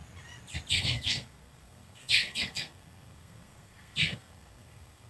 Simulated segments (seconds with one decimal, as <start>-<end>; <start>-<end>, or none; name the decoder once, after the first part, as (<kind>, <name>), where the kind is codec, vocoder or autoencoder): 0.7-5.1 (codec, SNAC)